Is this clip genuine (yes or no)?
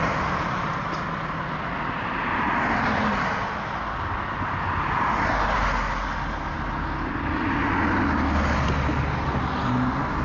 yes